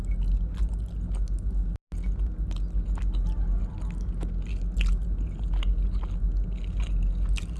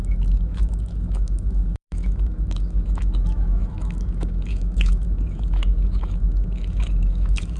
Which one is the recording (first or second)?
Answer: first